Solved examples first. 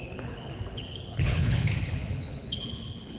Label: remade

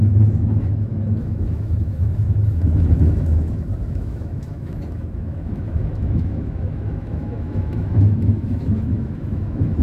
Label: remade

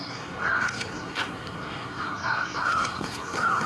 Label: remade